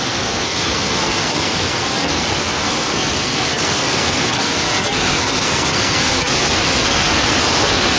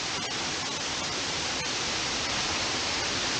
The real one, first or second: second